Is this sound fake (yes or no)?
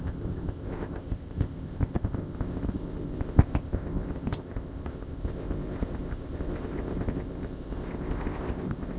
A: yes